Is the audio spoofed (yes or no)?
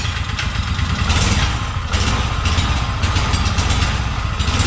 no